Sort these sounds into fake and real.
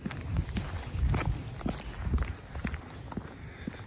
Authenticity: real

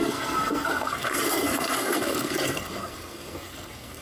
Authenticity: fake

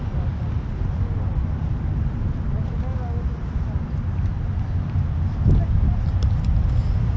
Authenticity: real